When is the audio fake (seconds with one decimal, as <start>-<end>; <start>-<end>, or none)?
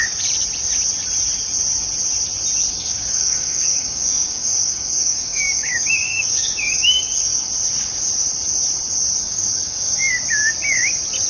2.7-7.5; 9.2-10.1